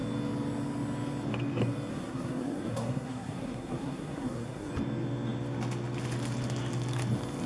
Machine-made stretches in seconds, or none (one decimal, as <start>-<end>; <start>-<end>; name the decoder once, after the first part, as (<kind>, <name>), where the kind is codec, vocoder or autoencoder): 1.9-4.7 (codec, SNAC)